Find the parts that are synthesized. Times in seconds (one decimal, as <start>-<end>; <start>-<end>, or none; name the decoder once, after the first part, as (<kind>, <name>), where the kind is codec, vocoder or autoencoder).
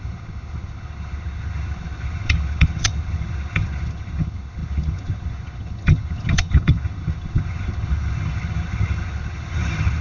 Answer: 0.0-10.0 (vocoder, HiFi-GAN)